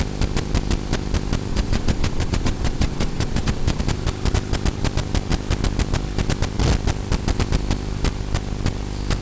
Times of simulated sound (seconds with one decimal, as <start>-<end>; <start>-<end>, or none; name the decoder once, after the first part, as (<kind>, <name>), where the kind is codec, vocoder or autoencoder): 1.5-3.8 (vocoder, Vocos)